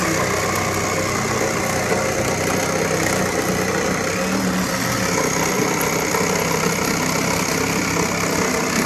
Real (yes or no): yes